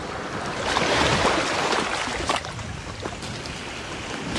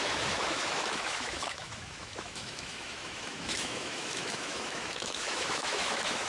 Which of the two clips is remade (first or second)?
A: second